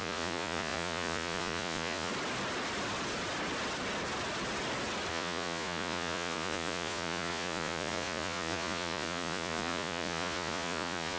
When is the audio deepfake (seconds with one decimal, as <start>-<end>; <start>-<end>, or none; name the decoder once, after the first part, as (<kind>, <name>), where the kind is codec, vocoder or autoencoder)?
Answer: 0.0-2.1 (vocoder, Vocos); 5.1-11.2